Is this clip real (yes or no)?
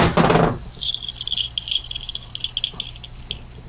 yes